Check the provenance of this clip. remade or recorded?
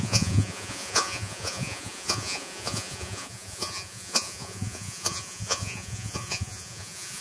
remade